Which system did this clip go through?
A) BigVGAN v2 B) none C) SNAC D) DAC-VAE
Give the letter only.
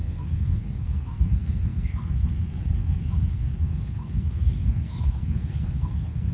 C